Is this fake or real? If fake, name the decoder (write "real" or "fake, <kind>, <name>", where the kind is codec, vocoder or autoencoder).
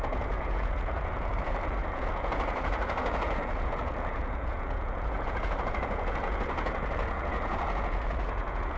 fake, vocoder, Vocos